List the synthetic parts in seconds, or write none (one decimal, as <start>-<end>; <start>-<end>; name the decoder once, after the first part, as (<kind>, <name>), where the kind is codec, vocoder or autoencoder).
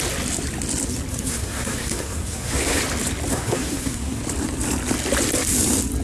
1.1-2.8 (codec, SNAC); 3.3-4.2